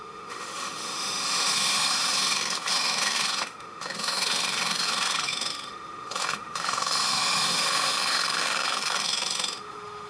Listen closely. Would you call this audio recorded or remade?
remade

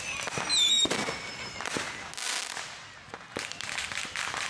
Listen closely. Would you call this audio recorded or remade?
recorded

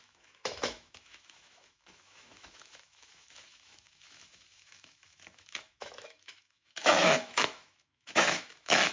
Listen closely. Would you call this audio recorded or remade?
remade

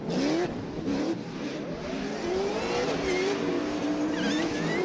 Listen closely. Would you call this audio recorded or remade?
recorded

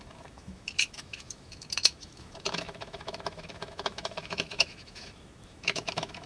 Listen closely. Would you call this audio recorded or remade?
remade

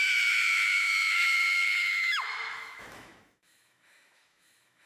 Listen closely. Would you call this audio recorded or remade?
remade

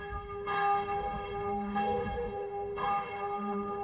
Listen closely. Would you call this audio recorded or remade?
remade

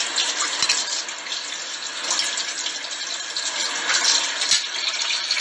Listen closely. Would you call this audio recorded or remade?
recorded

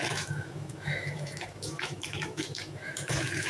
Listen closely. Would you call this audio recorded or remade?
remade